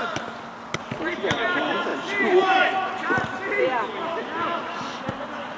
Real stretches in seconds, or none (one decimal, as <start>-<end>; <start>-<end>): 0.0-5.6